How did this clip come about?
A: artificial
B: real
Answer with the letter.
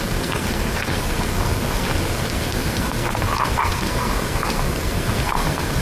A